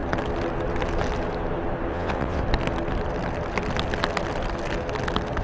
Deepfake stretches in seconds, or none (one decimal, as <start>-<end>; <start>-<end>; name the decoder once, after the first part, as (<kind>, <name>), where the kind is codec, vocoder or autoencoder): 1.9-2.4 (vocoder, WaveNeXt)